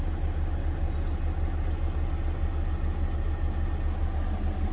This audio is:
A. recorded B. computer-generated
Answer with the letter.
A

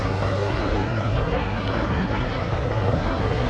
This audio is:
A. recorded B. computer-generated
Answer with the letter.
B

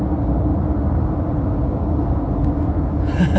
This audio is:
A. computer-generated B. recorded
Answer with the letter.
B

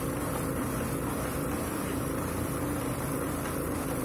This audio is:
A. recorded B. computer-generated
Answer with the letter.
B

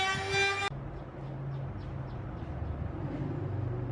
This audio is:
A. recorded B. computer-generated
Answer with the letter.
A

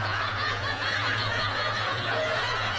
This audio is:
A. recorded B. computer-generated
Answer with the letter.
B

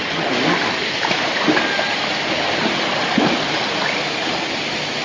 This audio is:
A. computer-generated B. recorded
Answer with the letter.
B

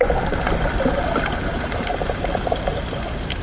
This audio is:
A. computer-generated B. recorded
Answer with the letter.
B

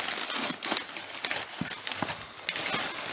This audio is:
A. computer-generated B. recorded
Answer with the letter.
B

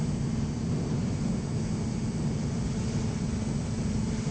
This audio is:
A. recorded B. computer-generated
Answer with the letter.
A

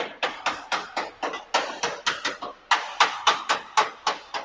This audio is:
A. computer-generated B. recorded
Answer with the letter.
B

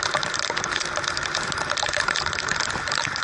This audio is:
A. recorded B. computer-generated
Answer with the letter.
B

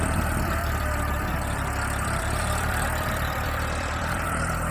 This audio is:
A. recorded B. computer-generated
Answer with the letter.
B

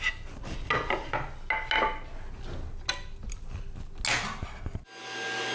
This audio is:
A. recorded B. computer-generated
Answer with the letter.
A